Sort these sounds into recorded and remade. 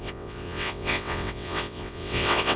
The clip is remade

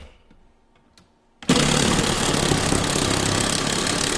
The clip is recorded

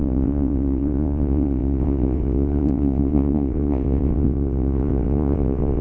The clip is remade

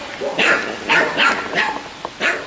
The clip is recorded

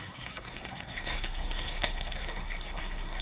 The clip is remade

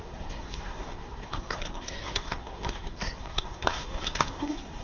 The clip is remade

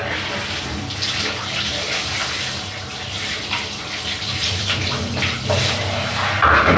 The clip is recorded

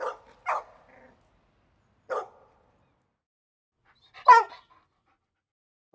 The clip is recorded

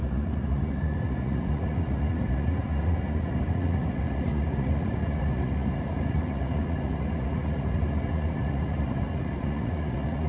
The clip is remade